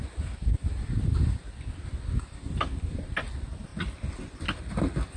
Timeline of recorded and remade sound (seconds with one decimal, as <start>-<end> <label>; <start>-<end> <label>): 0.0-5.2 recorded